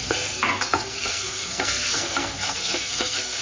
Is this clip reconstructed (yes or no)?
yes